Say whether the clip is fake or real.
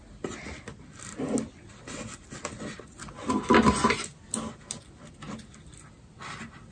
real